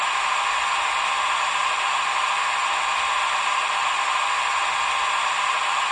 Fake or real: real